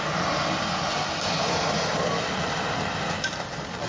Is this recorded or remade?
recorded